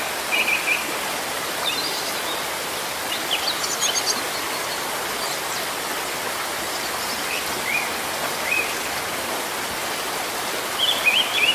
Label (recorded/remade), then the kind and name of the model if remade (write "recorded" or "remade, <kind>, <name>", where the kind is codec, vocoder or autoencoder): recorded